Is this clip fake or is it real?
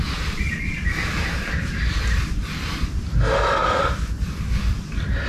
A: real